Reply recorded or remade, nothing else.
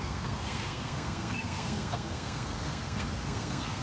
remade